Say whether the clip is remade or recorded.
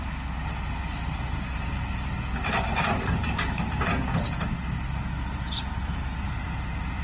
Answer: recorded